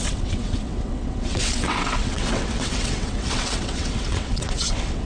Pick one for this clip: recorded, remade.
remade